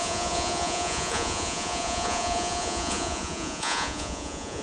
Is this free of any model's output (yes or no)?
no